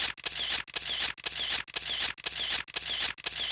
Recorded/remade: recorded